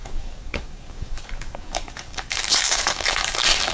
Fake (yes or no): yes